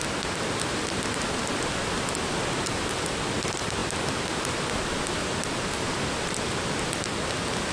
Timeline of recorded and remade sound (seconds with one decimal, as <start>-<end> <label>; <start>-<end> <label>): 0.0-7.7 recorded